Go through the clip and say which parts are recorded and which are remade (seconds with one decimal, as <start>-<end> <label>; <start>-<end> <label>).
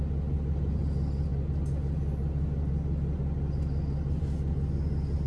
0.0-5.3 recorded